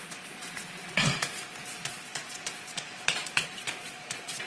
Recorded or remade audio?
remade